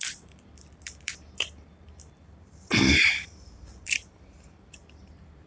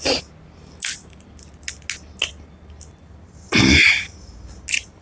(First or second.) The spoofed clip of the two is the first